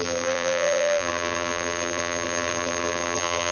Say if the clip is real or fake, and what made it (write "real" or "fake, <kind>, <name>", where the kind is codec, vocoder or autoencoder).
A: fake, vocoder, BigVGAN v2